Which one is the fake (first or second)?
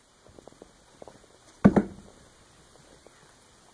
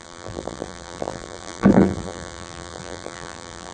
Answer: second